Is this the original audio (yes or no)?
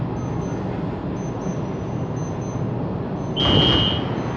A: yes